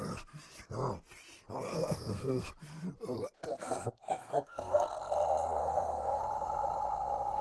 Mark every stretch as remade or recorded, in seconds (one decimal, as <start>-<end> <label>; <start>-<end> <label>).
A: 0.0-1.7 recorded; 1.7-2.5 remade; 2.5-3.5 recorded; 3.5-5.0 remade; 5.0-5.6 recorded; 5.6-6.2 remade; 6.2-7.4 recorded